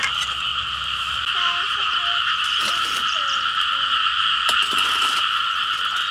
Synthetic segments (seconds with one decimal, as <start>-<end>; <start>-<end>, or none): 0.5-2.7